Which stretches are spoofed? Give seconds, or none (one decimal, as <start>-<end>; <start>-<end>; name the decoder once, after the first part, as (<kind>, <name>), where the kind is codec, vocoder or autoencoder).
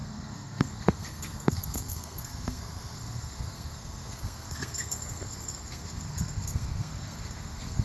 0.0-7.8 (codec, SNAC)